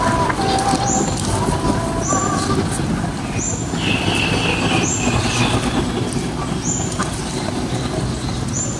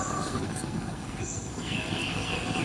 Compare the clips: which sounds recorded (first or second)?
first